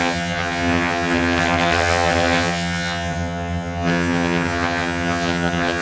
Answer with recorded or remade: remade